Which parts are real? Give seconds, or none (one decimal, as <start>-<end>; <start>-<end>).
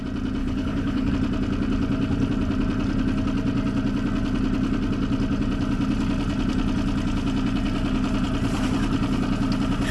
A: 0.0-0.4; 1.1-9.9